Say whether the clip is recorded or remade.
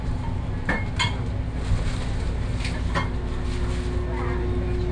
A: recorded